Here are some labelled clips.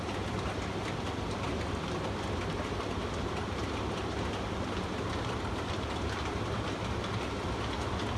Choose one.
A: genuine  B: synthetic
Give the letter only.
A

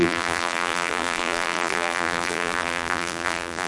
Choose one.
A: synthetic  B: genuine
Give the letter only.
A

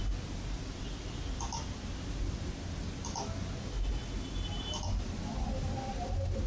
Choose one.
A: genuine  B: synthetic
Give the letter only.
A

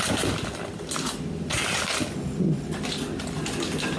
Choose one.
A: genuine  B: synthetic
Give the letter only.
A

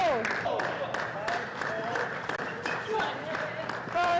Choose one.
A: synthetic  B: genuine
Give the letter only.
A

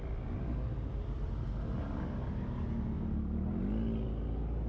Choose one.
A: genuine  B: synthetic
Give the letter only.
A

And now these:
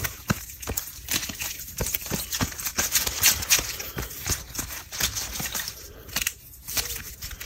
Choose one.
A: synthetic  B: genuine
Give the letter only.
A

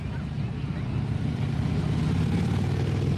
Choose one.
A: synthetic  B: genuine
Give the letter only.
B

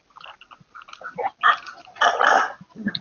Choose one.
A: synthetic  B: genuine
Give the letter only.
B